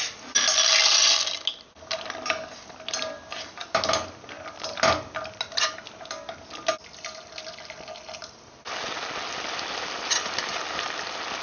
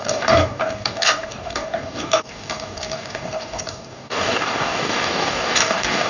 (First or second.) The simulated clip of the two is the second